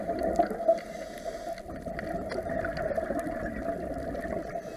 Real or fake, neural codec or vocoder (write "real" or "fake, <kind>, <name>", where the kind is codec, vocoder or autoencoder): real